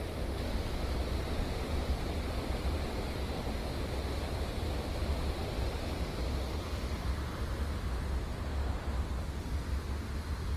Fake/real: real